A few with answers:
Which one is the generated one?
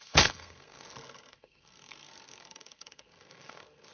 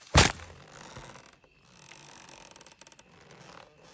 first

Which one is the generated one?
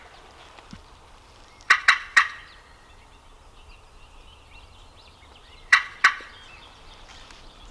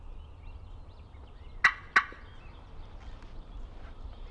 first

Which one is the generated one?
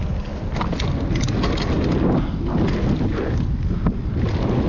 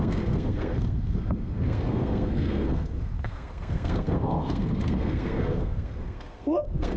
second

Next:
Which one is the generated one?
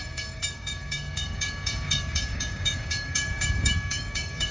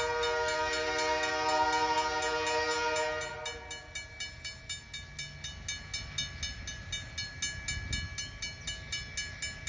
first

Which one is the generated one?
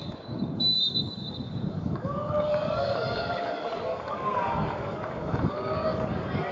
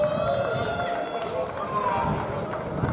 first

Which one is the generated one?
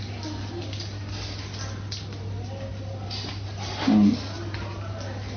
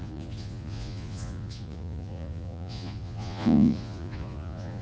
second